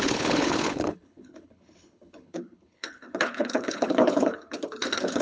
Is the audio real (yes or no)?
no